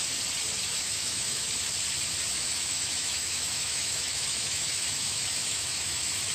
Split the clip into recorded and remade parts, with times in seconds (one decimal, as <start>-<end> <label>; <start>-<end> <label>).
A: 0.0-0.7 recorded; 0.7-1.5 remade; 1.5-2.3 recorded; 2.3-6.3 remade